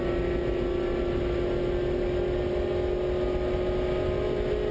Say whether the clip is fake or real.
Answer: real